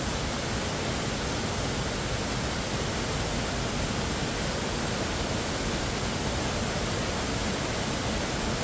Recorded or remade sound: recorded